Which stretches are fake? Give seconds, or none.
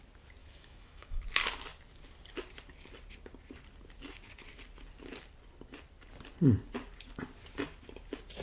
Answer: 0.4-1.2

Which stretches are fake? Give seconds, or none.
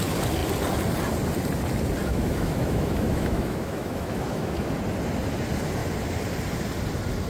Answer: 2.0-4.7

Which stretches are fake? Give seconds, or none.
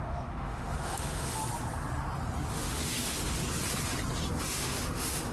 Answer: 0.0-1.4; 2.5-3.4; 4.4-5.3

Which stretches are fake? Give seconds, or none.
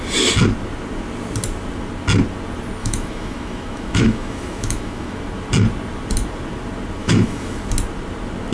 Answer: 2.8-5.2; 7.0-7.6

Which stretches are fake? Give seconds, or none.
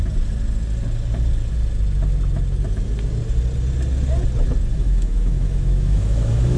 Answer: 4.7-6.6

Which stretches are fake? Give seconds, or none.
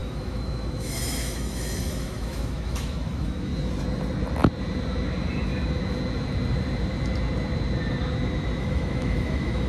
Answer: 0.0-3.5; 8.6-9.7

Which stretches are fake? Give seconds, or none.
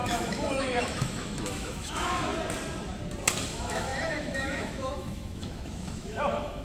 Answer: 0.0-2.3; 3.5-6.6